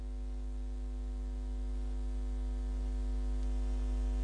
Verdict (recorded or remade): recorded